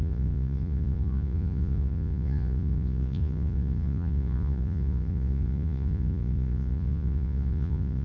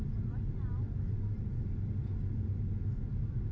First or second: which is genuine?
second